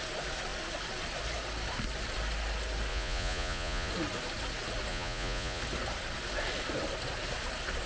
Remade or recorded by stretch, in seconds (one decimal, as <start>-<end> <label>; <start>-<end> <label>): 0.0-2.9 recorded; 2.9-3.9 remade; 3.9-4.9 recorded; 4.9-5.6 remade; 5.6-7.9 recorded